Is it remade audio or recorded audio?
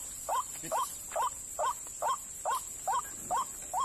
recorded